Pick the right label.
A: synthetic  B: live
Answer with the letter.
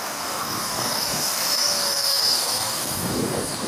A